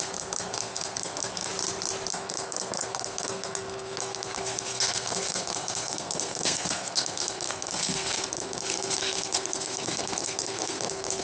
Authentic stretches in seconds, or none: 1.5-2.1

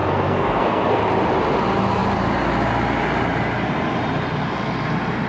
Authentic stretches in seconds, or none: 1.0-5.3

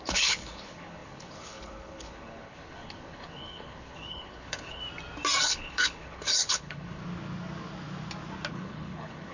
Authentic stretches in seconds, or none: 4.8-5.5; 7.0-8.5

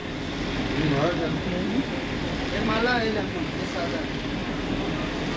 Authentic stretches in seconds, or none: 3.2-4.4

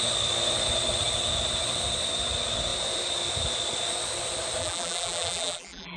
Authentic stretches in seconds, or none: 0.0-4.6

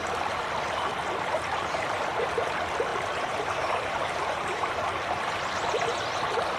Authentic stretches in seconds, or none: 0.0-1.5; 2.1-2.9; 4.7-6.6